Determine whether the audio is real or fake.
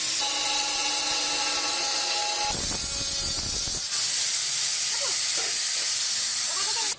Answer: real